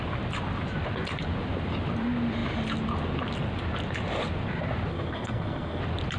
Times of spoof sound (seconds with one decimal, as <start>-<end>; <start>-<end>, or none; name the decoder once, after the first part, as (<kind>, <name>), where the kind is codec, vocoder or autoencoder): 4.9-5.8 (codec, SNAC)